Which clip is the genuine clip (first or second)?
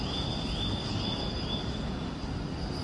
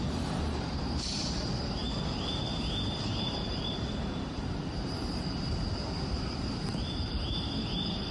first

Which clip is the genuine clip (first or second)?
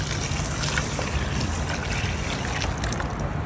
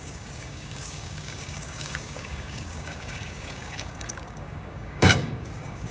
first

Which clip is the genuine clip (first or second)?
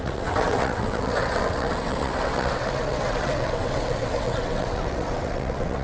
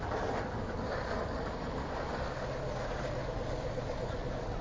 second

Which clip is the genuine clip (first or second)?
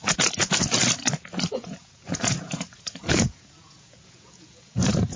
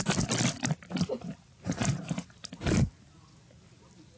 second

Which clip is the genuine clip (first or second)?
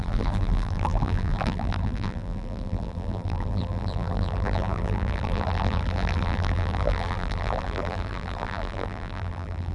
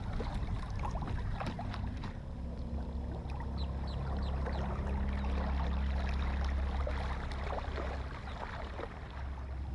second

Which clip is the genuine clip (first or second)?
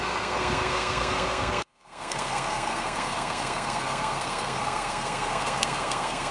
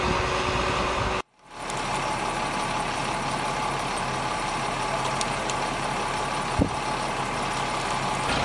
second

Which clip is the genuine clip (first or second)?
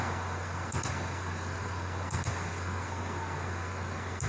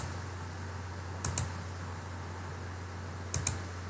second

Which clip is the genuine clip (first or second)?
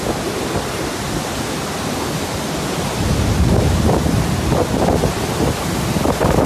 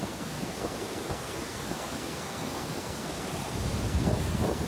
first